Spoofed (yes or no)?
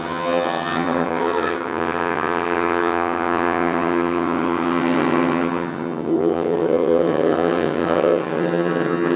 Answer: yes